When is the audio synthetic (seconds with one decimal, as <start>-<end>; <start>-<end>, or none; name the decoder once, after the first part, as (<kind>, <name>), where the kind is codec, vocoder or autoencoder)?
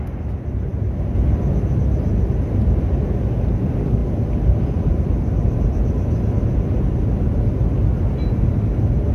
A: none